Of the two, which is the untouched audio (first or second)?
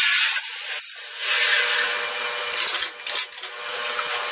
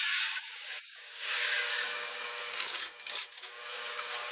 first